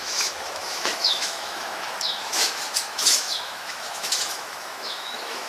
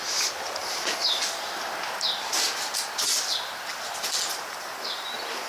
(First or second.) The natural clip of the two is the second